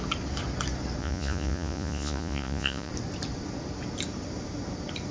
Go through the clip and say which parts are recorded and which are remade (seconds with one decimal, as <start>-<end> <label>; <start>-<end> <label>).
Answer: 0.0-1.0 recorded; 1.0-2.9 remade; 2.9-5.1 recorded

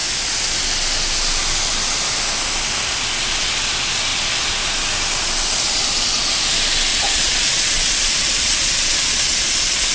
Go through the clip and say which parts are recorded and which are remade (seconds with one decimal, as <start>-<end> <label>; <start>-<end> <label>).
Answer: 0.0-6.9 recorded; 6.9-9.9 remade

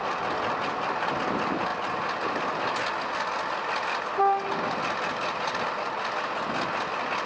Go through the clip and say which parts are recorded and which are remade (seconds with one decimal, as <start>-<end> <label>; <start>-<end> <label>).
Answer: 0.0-7.3 recorded

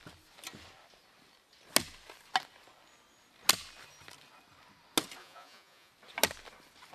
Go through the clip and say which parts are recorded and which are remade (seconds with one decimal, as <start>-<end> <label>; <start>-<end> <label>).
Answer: 0.0-5.2 recorded; 5.2-5.9 remade; 5.9-6.9 recorded

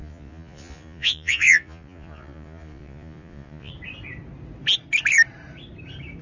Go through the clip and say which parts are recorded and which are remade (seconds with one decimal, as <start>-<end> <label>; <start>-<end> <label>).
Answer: 0.0-3.7 remade; 3.7-6.2 recorded

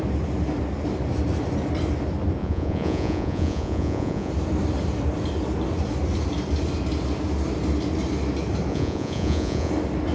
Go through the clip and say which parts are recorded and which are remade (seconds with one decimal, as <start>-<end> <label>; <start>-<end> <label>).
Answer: 0.0-2.4 recorded; 2.4-4.3 remade; 4.3-8.7 recorded; 8.7-9.7 remade; 9.7-10.1 recorded

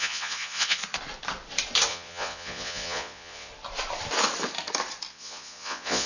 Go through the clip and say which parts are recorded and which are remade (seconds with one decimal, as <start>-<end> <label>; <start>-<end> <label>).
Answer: 0.0-0.8 remade; 0.8-1.9 recorded; 1.9-3.5 remade; 3.5-5.1 recorded; 5.1-6.1 remade

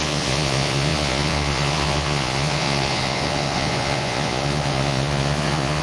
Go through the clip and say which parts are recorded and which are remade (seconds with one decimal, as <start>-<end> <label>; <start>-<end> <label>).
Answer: 0.0-5.8 remade